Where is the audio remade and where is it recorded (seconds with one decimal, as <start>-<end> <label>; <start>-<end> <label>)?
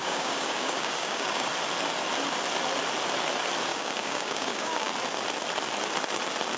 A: 0.0-1.5 remade; 1.5-3.7 recorded; 3.7-4.9 remade; 4.9-6.6 recorded